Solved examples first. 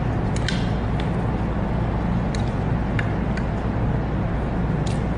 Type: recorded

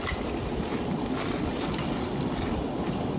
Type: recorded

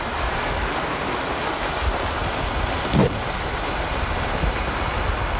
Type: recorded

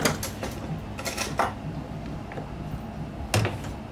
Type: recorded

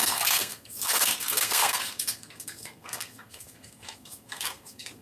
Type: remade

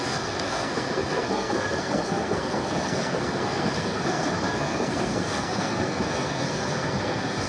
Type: remade